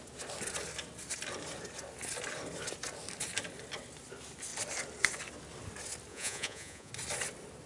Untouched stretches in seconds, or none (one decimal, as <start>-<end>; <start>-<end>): 0.0-6.1; 6.9-7.7